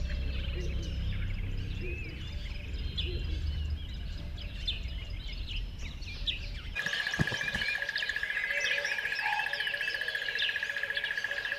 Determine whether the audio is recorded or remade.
recorded